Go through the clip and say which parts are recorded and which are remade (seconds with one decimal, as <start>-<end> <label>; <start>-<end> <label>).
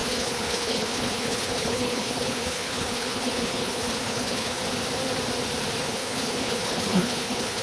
0.0-4.6 remade; 4.6-5.8 recorded; 5.8-7.6 remade